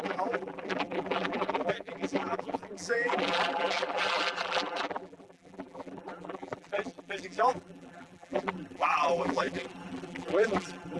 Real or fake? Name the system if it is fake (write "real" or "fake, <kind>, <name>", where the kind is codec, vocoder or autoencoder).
fake, vocoder, BigVGAN v2